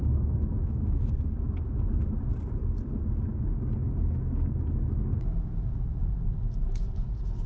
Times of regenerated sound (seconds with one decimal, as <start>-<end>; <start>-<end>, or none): 0.0-1.1